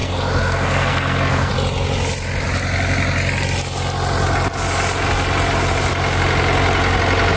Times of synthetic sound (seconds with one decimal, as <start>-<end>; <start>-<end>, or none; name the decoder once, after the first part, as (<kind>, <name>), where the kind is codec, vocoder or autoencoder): 0.0-1.5 (codec, SNAC)